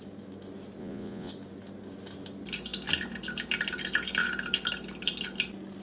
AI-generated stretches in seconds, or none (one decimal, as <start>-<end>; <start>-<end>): 0.8-1.3